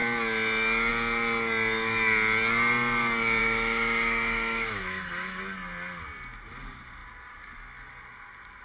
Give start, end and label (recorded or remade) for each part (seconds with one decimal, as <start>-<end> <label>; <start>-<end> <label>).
0.0-3.4 recorded; 3.4-5.4 remade; 5.4-8.6 recorded